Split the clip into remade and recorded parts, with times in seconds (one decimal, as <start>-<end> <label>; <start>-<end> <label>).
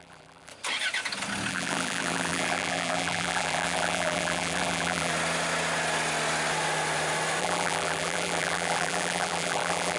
0.0-0.5 remade; 0.5-1.5 recorded; 1.5-5.1 remade; 5.1-7.4 recorded; 7.4-10.0 remade